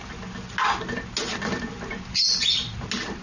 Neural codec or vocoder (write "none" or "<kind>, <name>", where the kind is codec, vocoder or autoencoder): none